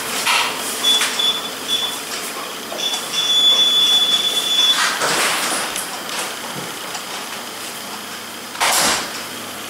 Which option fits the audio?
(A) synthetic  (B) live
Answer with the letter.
A